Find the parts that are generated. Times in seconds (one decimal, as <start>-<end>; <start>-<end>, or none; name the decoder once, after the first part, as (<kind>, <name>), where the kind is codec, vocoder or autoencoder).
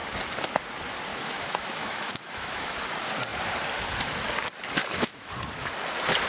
1.1-2.8 (autoencoder, DAC-VAE); 4.8-5.3